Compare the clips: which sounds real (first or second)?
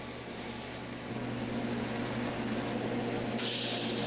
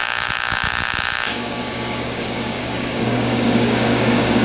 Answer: first